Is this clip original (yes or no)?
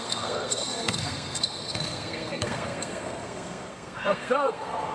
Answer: no